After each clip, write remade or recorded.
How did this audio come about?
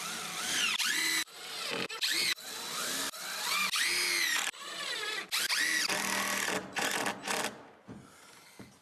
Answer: recorded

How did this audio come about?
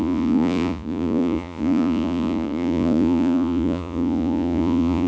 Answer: remade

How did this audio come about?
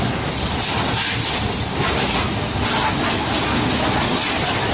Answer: recorded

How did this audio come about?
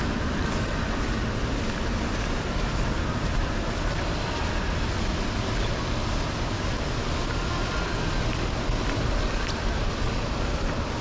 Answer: recorded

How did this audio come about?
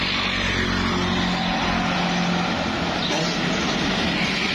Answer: recorded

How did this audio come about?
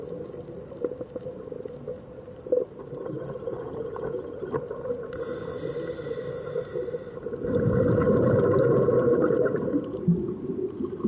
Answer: recorded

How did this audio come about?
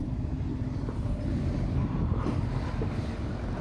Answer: recorded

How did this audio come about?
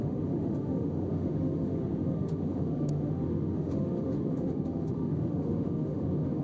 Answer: remade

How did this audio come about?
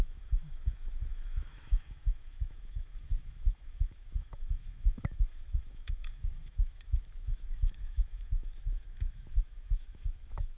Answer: remade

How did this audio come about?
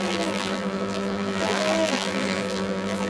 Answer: remade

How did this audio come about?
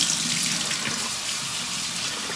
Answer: recorded